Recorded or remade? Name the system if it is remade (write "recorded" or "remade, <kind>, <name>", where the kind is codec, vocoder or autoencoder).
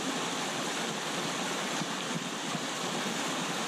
remade, vocoder, BigVGAN v2